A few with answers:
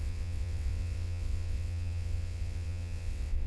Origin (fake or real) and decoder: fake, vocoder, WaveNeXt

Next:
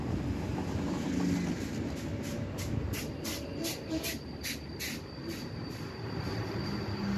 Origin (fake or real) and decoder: real